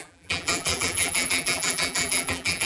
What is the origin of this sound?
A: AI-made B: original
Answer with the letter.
A